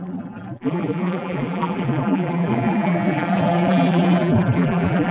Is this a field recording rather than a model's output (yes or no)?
no